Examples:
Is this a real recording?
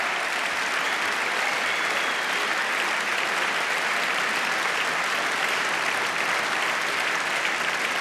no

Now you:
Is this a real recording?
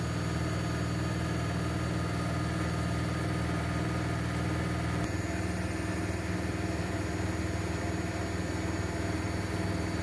yes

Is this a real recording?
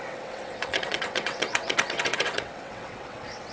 no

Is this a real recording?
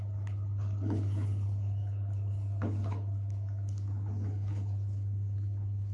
no